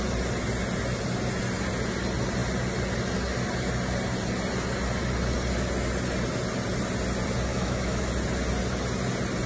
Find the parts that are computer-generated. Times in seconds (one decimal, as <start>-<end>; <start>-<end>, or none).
7.5-8.1